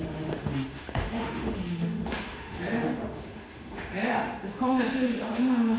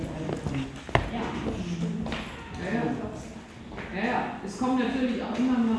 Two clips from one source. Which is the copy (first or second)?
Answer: first